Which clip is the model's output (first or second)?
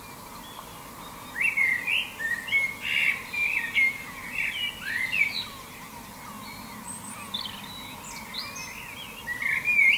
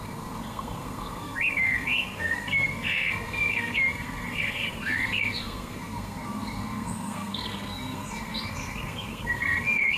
second